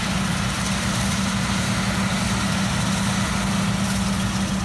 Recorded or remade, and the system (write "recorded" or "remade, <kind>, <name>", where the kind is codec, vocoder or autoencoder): recorded